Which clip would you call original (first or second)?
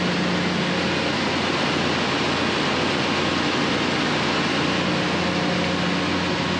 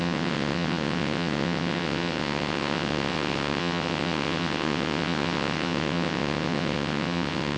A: first